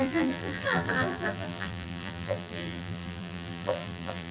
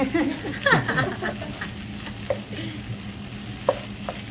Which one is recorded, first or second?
second